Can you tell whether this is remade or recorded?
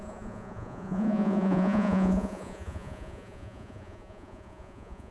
remade